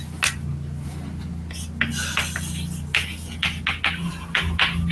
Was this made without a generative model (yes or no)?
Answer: yes